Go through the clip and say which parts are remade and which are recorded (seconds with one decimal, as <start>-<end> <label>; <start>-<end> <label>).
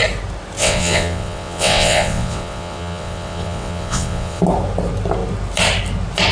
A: 0.0-0.6 recorded; 0.6-4.4 remade; 4.4-6.3 recorded